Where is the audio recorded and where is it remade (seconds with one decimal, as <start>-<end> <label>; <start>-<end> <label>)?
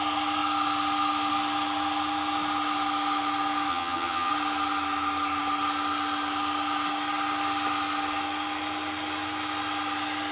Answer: 0.0-3.7 recorded; 3.7-4.3 remade; 4.3-10.3 recorded